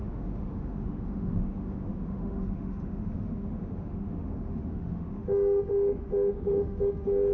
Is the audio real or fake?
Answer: fake